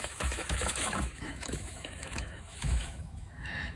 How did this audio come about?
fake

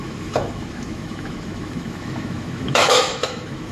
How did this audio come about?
fake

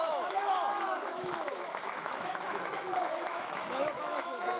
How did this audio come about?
fake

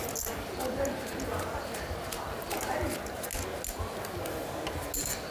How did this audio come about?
real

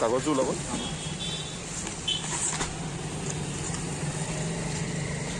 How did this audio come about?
real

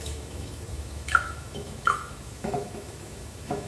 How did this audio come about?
fake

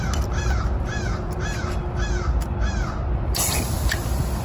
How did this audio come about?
real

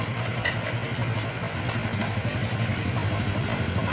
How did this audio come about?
real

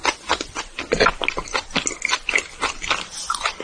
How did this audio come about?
real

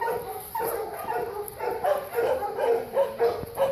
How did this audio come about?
real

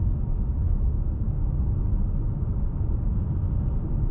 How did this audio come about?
real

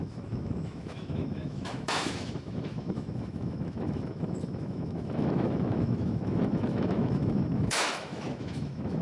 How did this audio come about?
fake